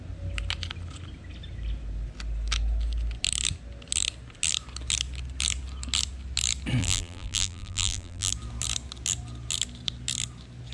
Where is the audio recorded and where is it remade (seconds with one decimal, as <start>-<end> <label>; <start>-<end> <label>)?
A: 0.0-6.8 recorded; 6.8-8.3 remade; 8.3-10.7 recorded